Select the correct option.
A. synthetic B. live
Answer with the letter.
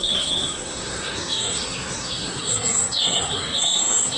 A